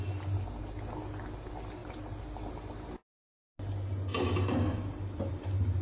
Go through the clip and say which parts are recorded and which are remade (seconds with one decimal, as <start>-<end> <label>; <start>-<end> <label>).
0.0-5.8 recorded